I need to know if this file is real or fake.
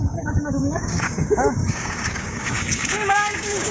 fake